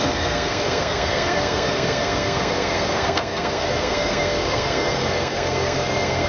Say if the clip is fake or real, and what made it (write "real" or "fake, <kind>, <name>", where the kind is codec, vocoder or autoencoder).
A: fake, codec, SNAC